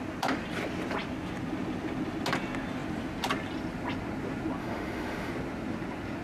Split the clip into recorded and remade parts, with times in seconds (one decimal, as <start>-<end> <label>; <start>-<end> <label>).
0.0-4.6 recorded; 4.6-5.3 remade; 5.3-6.2 recorded